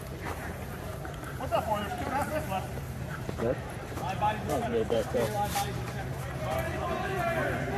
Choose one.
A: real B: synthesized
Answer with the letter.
B